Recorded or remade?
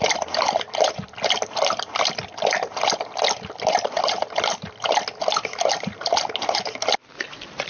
recorded